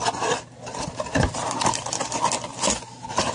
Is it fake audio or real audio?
fake